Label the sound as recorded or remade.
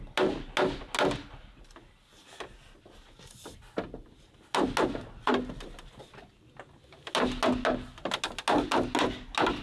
recorded